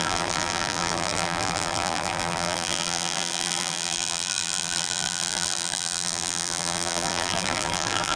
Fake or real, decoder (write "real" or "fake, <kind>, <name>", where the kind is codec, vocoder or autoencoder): fake, vocoder, BigVGAN v2